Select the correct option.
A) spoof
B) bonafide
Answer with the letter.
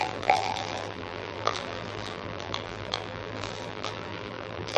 A